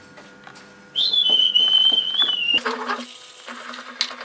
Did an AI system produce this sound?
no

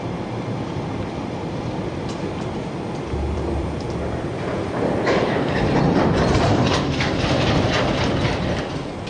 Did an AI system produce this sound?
yes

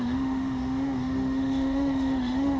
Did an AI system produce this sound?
yes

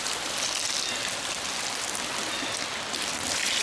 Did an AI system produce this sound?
no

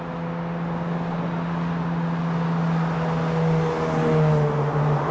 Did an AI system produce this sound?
no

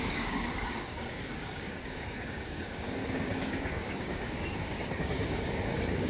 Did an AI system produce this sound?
yes